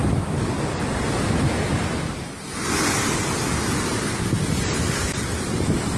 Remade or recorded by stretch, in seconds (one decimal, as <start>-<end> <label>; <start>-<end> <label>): 0.0-6.0 recorded

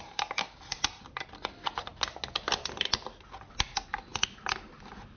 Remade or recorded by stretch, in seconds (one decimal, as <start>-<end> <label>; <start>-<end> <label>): 0.0-5.2 recorded

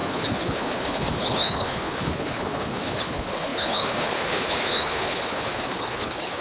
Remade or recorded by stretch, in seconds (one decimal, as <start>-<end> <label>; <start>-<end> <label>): 0.0-6.4 remade

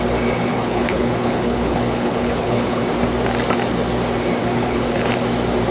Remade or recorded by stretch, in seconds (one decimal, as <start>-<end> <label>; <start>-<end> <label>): 0.0-0.5 recorded; 0.5-2.8 remade; 2.8-4.4 recorded; 4.4-5.1 remade; 5.1-5.7 recorded

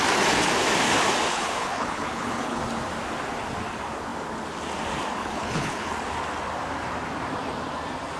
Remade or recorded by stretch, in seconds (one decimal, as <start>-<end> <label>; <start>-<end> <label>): 0.0-1.3 recorded; 1.3-2.6 remade; 2.6-5.2 recorded; 5.2-5.9 remade; 5.9-8.2 recorded

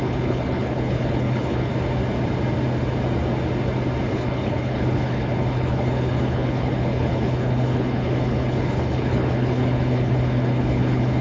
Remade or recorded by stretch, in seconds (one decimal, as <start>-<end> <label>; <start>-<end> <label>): 0.0-1.7 remade; 1.7-4.1 recorded; 4.1-11.2 remade